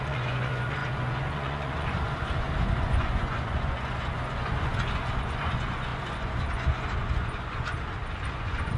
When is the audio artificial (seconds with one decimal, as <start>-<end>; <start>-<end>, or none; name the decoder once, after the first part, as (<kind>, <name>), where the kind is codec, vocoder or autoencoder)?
0.0-8.8 (vocoder, Vocos)